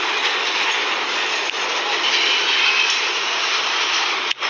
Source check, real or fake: real